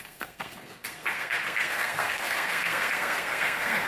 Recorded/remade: remade